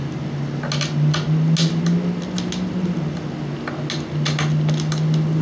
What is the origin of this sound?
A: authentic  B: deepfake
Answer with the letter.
A